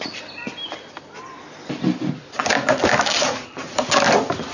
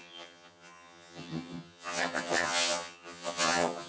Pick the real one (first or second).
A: first